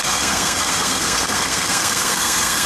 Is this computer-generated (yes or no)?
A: yes